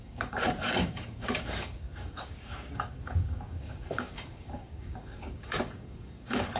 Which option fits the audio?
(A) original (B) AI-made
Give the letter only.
B